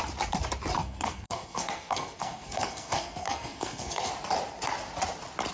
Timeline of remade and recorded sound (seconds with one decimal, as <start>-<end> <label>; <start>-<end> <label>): 0.0-0.8 recorded; 0.8-4.1 remade; 4.1-5.5 recorded